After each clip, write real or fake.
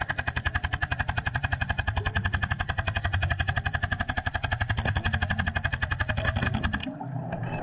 real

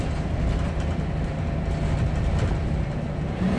real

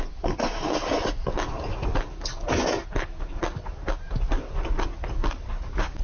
real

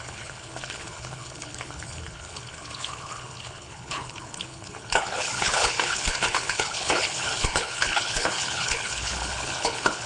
fake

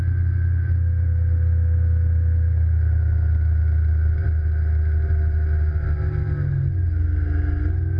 real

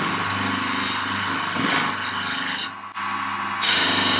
real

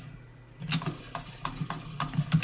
real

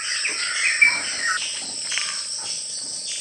real